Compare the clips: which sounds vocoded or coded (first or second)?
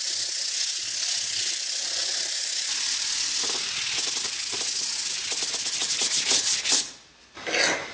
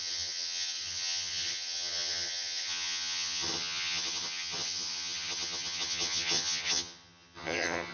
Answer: second